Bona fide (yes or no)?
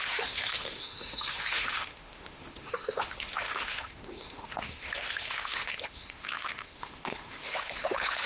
no